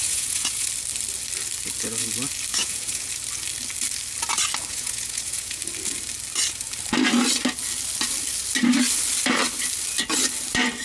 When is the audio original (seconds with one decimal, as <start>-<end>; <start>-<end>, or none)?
0.7-2.5; 3.1-4.7; 5.6-10.8